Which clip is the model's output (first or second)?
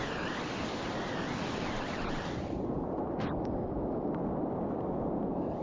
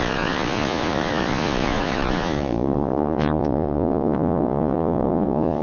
second